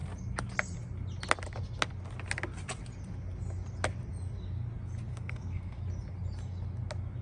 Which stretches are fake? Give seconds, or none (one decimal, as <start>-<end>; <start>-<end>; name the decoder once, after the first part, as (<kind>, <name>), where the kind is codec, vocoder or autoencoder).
5.1-5.8 (codec, SNAC)